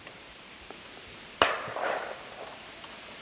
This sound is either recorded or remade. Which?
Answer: remade